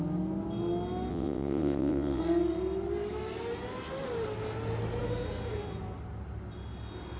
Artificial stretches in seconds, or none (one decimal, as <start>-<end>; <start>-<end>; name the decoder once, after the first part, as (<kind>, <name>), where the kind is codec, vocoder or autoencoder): 1.1-2.2 (vocoder, WaveNeXt)